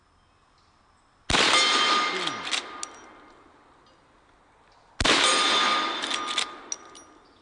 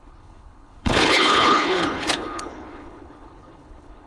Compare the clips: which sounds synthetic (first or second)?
second